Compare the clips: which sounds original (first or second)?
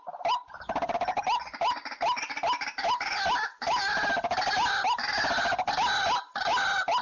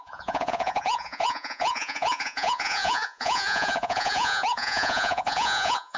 first